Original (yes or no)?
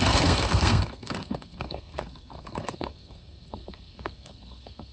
no